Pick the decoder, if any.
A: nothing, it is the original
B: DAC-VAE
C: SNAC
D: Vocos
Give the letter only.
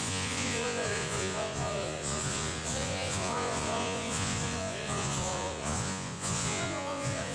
D